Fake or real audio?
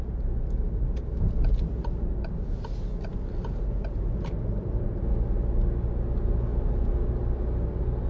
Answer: real